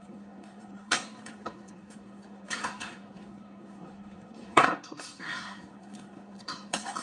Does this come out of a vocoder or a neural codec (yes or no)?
yes